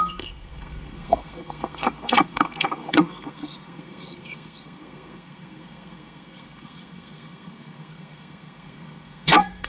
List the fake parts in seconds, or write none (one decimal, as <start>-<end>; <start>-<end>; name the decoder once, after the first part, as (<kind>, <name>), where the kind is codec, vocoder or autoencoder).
0.0-9.7 (codec, SNAC)